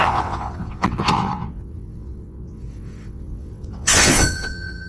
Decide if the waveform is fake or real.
fake